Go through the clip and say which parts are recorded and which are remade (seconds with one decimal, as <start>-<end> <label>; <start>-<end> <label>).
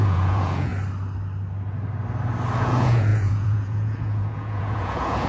0.0-0.7 remade; 0.7-2.6 recorded; 2.6-5.3 remade